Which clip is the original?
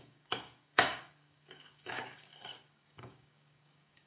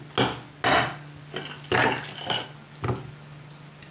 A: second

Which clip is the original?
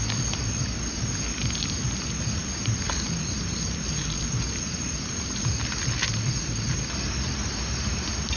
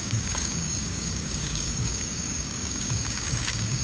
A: first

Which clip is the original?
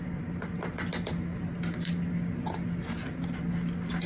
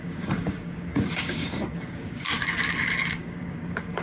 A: first